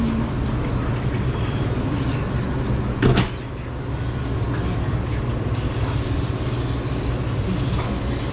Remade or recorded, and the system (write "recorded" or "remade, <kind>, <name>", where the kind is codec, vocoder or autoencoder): recorded